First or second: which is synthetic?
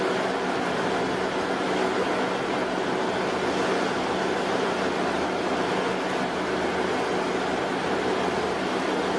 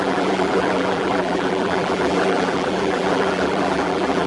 second